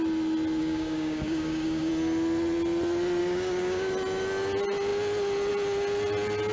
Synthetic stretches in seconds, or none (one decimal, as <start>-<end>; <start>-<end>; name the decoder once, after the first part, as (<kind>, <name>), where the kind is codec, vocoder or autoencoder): 0.6-1.9 (codec, DAC); 3.2-3.9